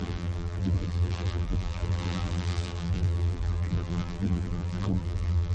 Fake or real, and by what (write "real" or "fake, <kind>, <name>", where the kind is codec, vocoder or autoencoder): fake, vocoder, BigVGAN v2